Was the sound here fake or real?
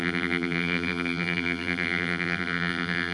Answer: fake